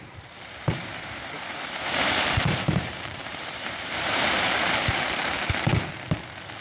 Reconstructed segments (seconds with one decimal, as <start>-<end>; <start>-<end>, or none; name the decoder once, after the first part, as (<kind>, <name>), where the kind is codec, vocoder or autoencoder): 0.0-5.7 (vocoder, BigVGAN v2)